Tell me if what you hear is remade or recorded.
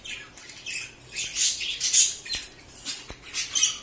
recorded